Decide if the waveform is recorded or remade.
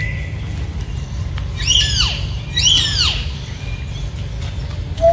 recorded